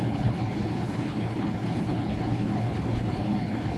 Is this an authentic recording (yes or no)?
no